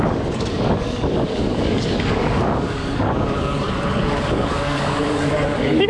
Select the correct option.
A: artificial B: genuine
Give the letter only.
A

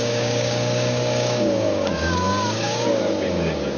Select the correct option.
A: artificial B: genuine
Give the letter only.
A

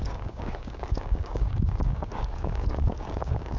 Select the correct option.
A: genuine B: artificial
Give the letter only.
B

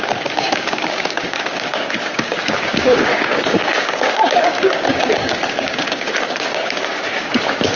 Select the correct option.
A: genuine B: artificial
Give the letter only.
B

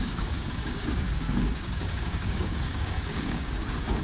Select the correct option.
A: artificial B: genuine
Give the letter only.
A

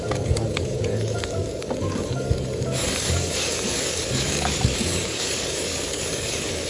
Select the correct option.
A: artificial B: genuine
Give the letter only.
A